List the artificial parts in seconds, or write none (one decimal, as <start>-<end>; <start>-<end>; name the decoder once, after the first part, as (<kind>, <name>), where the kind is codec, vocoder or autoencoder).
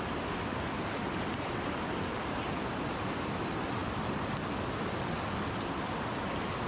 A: none